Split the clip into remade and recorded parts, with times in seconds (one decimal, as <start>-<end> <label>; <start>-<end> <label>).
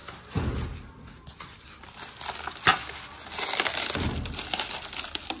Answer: 0.0-5.4 recorded